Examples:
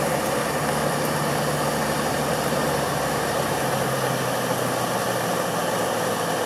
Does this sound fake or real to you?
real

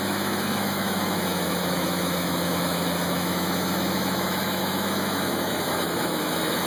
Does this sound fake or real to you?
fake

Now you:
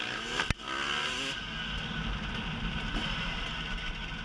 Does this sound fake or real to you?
real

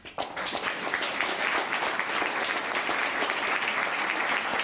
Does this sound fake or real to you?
real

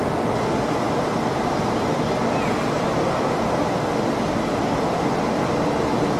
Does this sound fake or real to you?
real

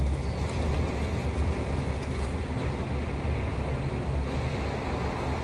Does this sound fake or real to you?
real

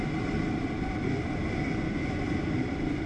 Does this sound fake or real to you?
real